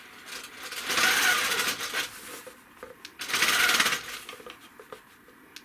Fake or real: real